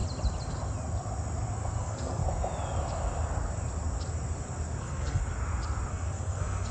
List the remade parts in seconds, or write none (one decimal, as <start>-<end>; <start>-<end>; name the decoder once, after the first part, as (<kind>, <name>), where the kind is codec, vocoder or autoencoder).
1.8-2.2 (codec, SNAC); 4.8-5.2; 5.9-6.7